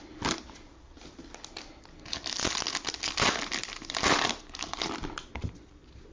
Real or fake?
real